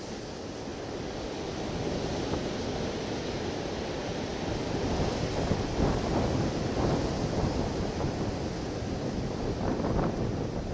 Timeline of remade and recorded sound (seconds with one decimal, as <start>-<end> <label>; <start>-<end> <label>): 0.0-10.7 recorded